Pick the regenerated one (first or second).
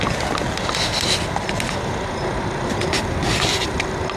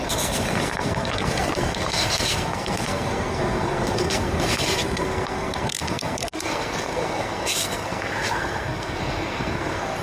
second